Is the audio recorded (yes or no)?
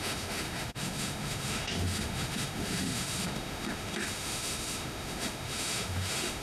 no